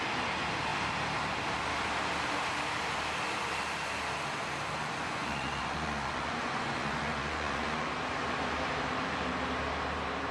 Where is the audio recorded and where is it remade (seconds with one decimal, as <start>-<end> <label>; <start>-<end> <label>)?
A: 0.0-4.8 recorded; 4.8-7.9 remade; 7.9-10.3 recorded